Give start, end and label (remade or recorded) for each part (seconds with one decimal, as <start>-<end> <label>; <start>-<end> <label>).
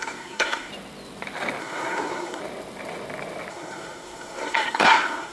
0.0-0.7 remade; 0.7-1.6 recorded; 1.6-2.4 remade; 2.4-3.5 recorded; 3.5-5.3 remade